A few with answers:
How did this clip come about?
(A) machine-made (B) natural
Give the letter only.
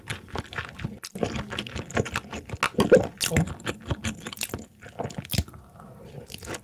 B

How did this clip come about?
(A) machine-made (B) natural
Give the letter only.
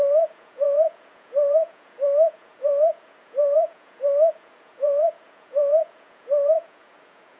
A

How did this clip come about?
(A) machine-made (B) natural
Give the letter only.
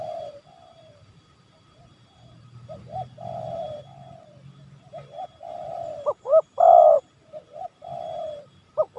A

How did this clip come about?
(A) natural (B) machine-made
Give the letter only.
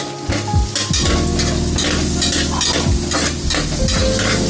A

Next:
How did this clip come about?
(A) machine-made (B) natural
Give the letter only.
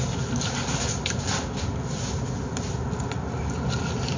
B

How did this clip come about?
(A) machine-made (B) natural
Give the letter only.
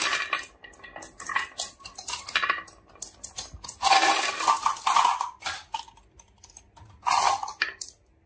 B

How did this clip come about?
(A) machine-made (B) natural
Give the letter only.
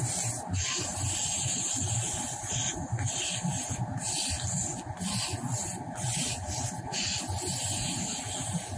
B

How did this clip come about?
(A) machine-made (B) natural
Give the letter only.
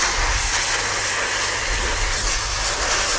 B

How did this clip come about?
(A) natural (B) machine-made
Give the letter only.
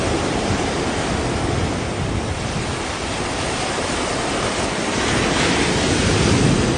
A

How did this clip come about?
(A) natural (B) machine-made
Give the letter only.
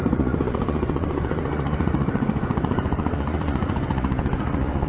B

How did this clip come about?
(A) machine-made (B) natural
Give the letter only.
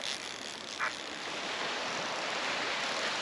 B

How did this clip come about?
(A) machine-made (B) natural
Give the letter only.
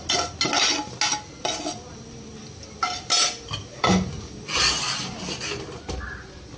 B